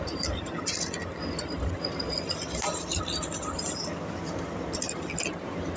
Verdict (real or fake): real